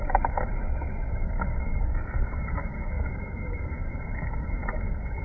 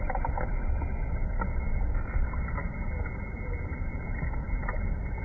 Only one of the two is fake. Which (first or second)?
first